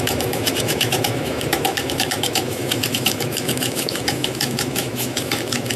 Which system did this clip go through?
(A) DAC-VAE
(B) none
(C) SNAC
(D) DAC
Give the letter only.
A